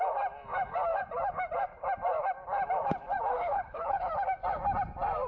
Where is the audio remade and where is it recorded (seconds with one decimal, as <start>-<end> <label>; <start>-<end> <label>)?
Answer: 0.0-3.3 recorded; 3.3-4.1 remade; 4.1-5.3 recorded